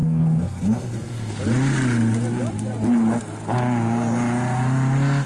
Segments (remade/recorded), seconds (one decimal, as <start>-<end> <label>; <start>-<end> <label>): 0.0-1.3 remade; 1.3-5.3 recorded